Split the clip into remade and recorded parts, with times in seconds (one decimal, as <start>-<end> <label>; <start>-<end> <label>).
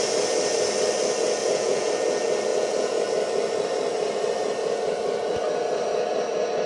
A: 0.0-1.4 recorded; 1.4-1.9 remade; 1.9-2.5 recorded; 2.5-3.0 remade; 3.0-6.7 recorded